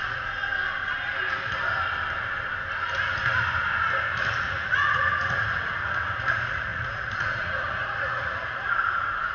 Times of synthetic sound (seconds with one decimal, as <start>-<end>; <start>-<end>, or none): 0.0-0.5; 4.2-9.3